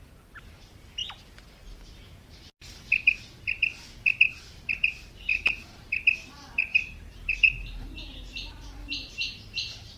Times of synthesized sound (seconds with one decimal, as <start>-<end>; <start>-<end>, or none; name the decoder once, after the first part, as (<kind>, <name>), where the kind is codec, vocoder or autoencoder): 5.3-5.9 (vocoder, BigVGAN v2); 6.7-9.3